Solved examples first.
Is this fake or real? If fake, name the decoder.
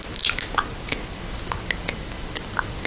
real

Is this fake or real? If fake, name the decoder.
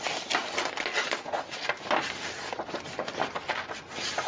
real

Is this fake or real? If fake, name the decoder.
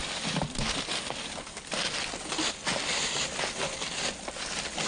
real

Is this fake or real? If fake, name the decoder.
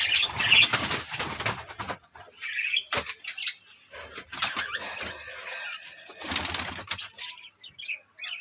real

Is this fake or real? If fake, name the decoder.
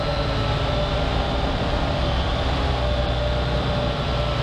real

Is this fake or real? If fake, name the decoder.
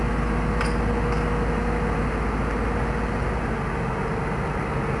real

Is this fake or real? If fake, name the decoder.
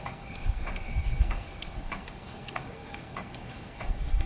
fake, codec, SNAC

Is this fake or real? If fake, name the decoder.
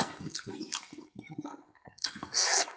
fake, codec, SNAC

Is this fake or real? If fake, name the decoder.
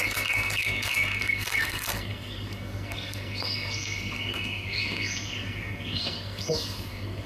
fake, codec, SNAC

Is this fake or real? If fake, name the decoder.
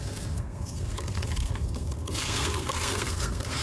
fake, codec, SNAC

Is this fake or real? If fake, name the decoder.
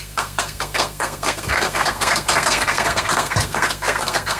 fake, codec, SNAC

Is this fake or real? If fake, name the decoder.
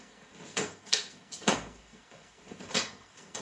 fake, codec, SNAC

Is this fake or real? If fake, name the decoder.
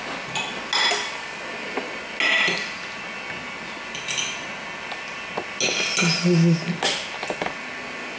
real